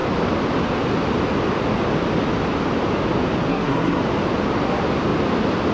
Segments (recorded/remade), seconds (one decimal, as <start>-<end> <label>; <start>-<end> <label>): 0.0-3.5 recorded; 3.5-4.0 remade; 4.0-5.7 recorded